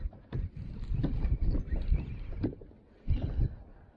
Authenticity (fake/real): real